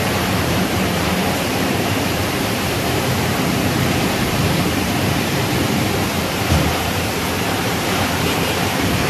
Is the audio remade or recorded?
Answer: remade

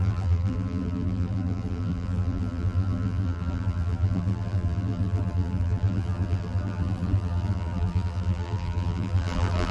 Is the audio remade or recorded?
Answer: remade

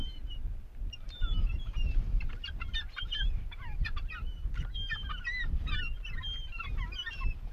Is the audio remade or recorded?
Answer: remade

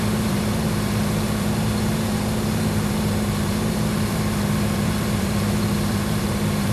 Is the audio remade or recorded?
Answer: remade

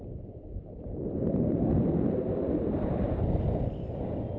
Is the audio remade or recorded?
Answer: remade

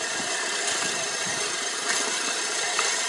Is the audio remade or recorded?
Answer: remade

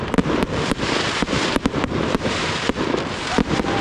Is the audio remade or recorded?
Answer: remade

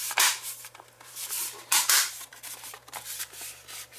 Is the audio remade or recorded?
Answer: remade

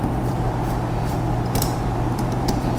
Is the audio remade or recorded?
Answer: remade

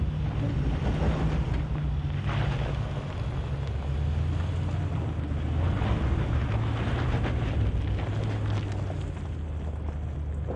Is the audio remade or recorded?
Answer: recorded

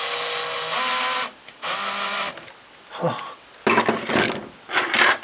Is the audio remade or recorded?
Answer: recorded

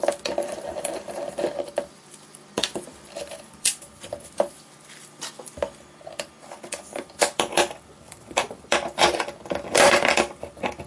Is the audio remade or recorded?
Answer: remade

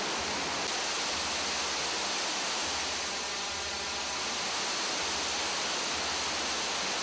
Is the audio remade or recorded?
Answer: recorded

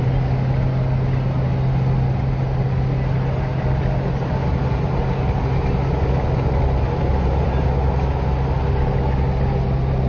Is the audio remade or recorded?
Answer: recorded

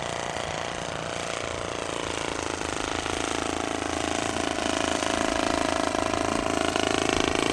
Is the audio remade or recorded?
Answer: recorded